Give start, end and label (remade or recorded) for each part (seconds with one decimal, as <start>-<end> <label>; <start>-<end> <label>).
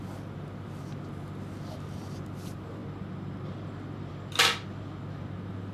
0.0-5.7 recorded